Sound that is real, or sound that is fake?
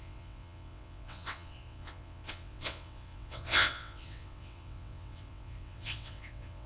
fake